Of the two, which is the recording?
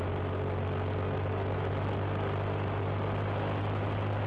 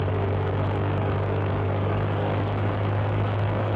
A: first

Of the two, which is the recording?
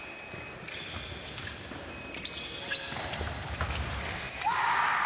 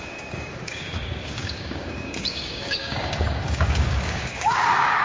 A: first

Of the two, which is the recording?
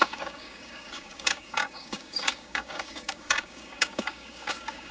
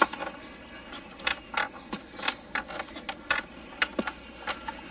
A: second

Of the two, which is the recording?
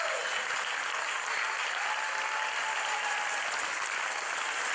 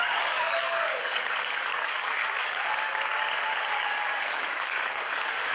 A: first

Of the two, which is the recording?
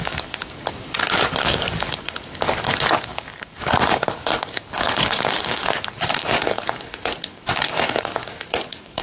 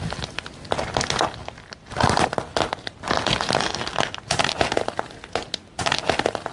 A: second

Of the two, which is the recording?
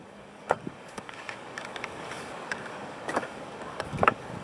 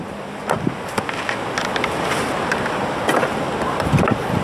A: second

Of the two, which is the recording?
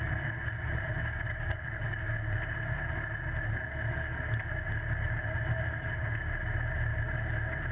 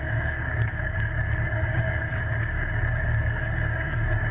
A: first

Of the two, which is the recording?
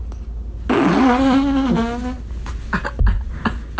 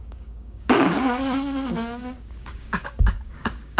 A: first